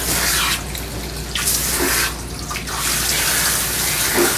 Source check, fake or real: real